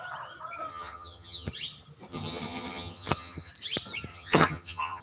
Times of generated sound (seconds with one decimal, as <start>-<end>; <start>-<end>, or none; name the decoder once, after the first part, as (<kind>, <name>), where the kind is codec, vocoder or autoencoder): 0.7-1.5 (vocoder, HiFi-GAN); 2.1-3.5; 4.1-5.0